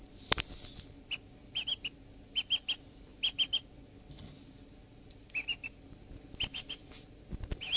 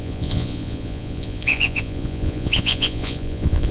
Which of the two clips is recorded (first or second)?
first